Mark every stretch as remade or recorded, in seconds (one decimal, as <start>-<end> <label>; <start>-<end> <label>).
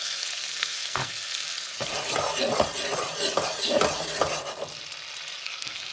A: 0.0-1.9 remade; 1.9-5.4 recorded; 5.4-5.9 remade